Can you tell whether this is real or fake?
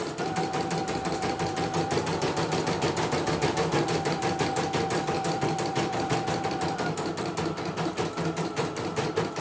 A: real